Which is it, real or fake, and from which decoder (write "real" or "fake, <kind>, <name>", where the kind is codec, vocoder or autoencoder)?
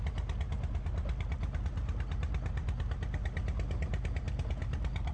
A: real